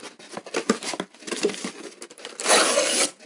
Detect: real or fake real